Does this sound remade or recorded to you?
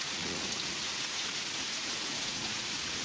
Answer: remade